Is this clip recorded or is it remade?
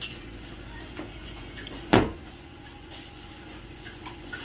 remade